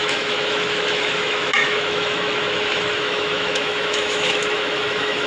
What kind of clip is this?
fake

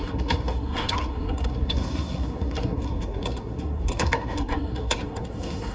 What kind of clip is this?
fake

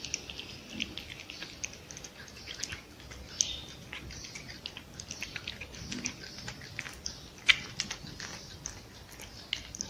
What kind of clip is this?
real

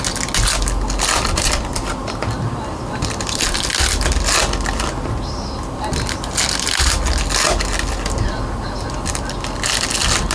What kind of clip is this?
real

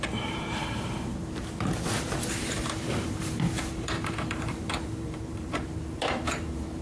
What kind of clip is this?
fake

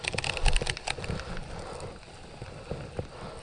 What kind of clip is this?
real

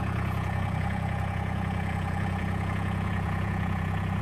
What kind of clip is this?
fake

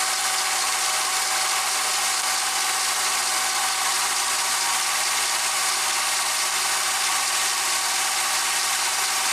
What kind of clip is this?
real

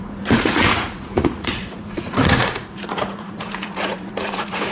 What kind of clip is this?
fake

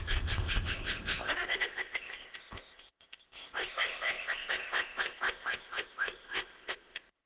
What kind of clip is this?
fake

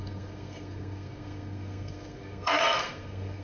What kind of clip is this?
fake